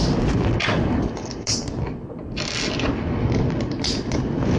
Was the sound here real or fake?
real